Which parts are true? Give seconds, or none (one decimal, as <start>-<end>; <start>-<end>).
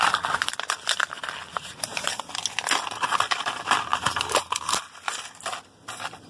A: 0.0-1.5; 2.3-3.9; 4.5-6.3